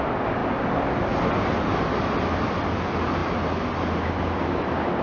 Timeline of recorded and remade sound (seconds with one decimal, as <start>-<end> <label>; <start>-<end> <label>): 0.0-5.0 recorded